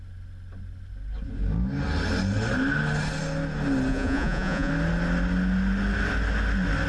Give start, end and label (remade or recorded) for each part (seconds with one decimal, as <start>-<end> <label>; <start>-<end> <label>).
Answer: 0.0-3.9 recorded; 3.9-4.7 remade; 4.7-6.9 recorded